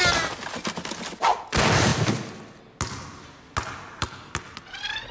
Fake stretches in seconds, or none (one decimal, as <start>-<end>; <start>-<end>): none